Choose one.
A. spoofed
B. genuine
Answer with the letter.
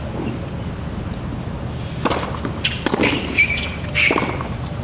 B